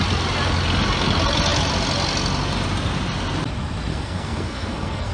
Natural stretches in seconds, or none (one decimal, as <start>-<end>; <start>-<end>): 0.0-3.9